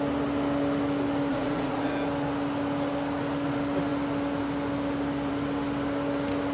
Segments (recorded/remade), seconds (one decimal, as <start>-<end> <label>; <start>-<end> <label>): 0.0-1.3 recorded; 1.3-1.9 remade; 1.9-6.5 recorded